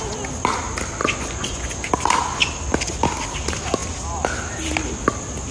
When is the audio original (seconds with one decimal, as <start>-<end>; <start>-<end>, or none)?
0.0-1.0; 1.9-5.5

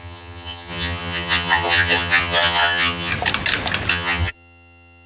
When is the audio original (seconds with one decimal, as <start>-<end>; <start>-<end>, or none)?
3.1-3.9

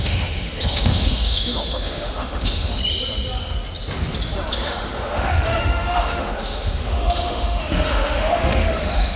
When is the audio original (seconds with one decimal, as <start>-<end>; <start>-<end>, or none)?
2.8-4.5

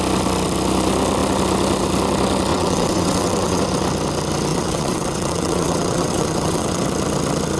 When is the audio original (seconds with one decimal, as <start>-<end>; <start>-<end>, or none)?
0.0-2.5; 3.6-4.5; 6.8-7.6

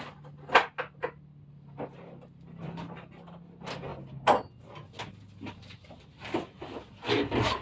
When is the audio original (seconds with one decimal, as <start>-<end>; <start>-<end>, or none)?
0.0-7.6

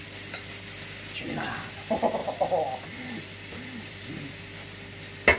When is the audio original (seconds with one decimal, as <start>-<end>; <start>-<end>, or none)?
0.0-2.2; 4.1-5.4

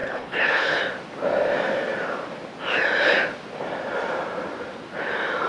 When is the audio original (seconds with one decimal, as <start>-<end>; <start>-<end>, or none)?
0.8-5.5